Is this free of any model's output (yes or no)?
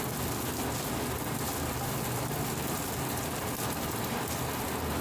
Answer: yes